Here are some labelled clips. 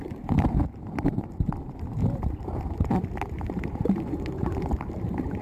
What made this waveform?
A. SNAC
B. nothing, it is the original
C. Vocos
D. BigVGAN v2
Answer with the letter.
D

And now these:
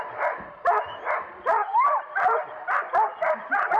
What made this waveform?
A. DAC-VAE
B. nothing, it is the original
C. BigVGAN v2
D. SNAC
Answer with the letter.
C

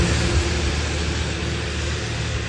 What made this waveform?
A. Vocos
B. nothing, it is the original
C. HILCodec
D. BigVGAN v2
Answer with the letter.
B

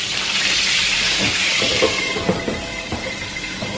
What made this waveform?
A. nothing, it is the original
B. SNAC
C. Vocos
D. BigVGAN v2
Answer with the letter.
D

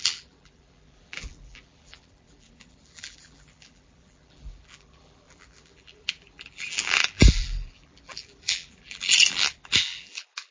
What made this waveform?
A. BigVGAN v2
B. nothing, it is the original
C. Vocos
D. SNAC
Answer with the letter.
A